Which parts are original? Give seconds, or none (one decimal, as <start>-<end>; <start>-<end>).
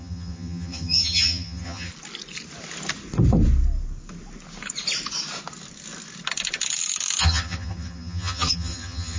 1.9-7.2